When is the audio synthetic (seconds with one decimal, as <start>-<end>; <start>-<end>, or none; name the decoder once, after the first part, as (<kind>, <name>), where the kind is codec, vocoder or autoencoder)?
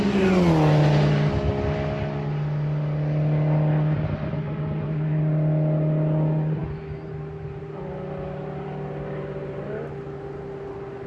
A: none